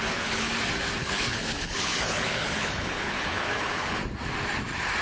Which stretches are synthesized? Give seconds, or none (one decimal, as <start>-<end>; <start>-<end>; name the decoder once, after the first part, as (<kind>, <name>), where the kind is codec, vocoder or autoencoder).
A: 0.0-0.5 (codec, HILCodec); 1.0-4.0

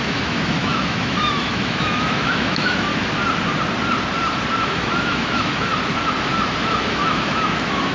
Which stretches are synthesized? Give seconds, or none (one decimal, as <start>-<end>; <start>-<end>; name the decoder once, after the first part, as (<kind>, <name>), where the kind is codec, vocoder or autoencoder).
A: 0.0-2.9 (autoencoder, DAC-VAE); 4.6-5.7; 6.7-7.9

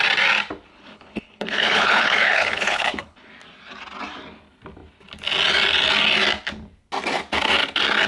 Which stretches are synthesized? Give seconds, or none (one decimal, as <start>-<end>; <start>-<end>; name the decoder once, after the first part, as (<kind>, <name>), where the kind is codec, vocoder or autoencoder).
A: 0.7-3.3 (codec, HILCodec)

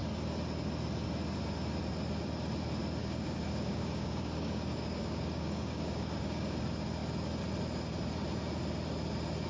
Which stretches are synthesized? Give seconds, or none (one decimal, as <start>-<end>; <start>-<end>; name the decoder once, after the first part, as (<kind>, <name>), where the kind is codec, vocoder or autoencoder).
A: 3.0-6.6 (codec, DAC)

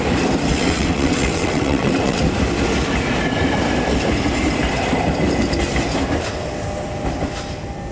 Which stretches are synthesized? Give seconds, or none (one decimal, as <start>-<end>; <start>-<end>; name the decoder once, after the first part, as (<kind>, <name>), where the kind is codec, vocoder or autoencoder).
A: 0.5-2.2 (vocoder, WaveNeXt)

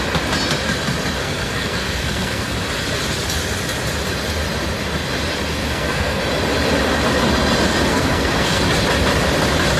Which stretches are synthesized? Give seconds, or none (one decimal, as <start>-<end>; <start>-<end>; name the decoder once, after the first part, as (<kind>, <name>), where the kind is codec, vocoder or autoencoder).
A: 1.2-2.5 (codec, SNAC); 5.6-6.2; 7.9-8.6

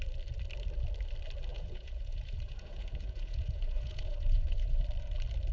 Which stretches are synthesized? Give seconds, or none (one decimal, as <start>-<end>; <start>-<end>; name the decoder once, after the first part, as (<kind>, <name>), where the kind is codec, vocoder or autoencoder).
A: 1.5-4.8 (vocoder, Vocos)